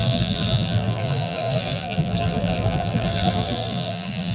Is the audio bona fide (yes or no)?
no